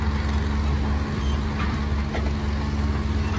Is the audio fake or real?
real